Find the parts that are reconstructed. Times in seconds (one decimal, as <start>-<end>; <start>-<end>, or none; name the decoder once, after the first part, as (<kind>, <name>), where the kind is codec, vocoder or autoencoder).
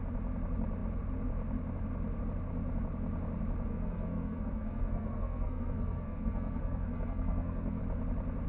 3.7-7.8 (codec, SNAC)